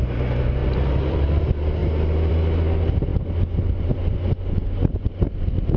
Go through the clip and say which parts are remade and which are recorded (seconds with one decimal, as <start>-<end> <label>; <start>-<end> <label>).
0.0-0.6 recorded; 0.6-1.4 remade; 1.4-5.8 recorded